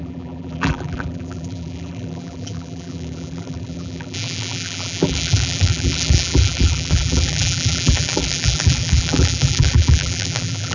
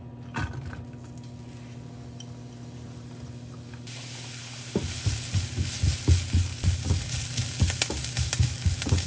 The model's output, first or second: first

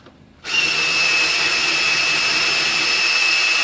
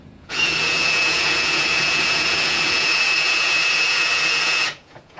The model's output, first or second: second